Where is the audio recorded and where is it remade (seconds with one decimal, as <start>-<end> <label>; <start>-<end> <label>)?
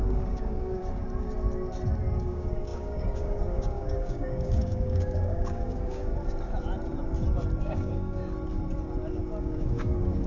0.0-0.8 remade; 0.8-2.2 recorded; 2.2-6.1 remade; 6.1-7.6 recorded; 7.6-8.2 remade; 8.2-9.4 recorded; 9.4-10.3 remade